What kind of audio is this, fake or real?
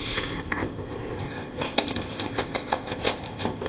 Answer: fake